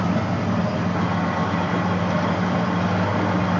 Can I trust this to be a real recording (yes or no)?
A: yes